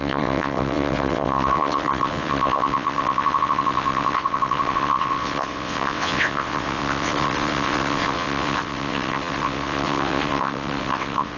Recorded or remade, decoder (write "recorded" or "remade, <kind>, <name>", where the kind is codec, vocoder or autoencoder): remade, vocoder, WaveNeXt